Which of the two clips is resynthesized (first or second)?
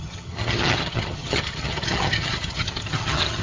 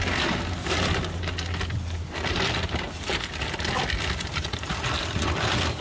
first